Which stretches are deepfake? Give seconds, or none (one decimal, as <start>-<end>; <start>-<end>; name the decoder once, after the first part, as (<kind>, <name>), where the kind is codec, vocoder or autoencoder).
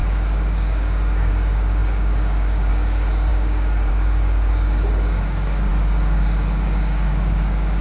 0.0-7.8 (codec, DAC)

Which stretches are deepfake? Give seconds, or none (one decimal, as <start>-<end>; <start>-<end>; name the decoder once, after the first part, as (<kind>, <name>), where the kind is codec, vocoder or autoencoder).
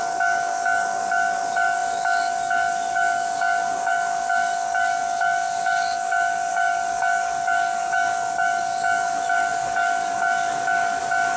0.0-11.4 (codec, DAC)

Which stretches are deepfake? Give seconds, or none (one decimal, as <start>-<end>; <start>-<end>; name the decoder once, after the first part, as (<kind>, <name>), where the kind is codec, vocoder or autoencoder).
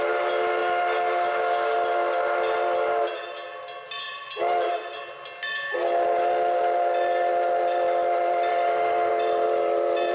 8.5-9.1 (codec, DAC)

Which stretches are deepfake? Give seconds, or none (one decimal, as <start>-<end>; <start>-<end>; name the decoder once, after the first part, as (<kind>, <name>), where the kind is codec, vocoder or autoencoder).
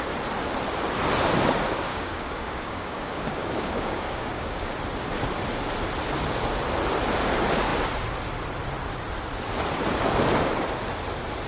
1.9-4.7 (codec, DAC)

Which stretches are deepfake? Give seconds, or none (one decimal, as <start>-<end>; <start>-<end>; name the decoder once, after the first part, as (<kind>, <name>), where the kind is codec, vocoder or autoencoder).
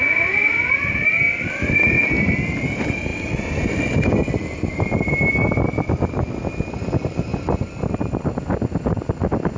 none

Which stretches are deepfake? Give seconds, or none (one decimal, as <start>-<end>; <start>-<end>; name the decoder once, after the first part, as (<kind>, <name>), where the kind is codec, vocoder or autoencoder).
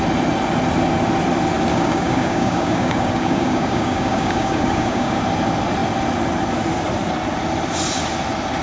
1.7-5.2 (codec, DAC)